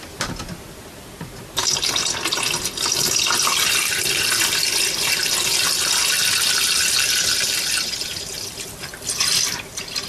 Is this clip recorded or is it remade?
remade